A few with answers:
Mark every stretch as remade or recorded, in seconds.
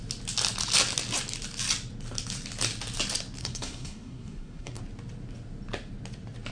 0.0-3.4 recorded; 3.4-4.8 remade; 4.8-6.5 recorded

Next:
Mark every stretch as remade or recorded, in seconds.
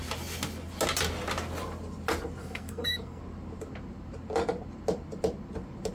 0.0-2.4 recorded; 2.4-3.2 remade; 3.2-5.9 recorded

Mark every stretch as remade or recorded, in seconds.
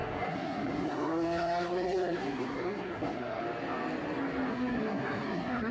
0.0-3.4 remade; 3.4-4.5 recorded; 4.5-5.7 remade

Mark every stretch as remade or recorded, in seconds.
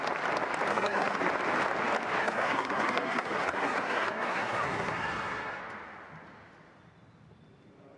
0.0-0.7 recorded; 0.7-1.2 remade; 1.2-2.2 recorded; 2.2-5.6 remade; 5.6-8.0 recorded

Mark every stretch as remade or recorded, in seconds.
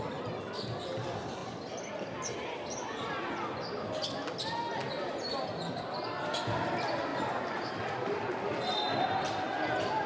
0.0-10.1 recorded